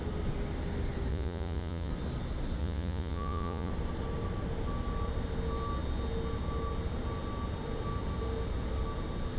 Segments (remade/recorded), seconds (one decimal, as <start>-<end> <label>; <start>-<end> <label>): 0.0-1.1 recorded; 1.1-1.9 remade; 1.9-2.6 recorded; 2.6-3.7 remade; 3.7-9.4 recorded